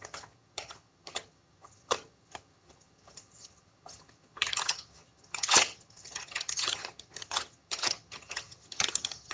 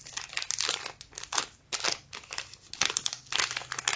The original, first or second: second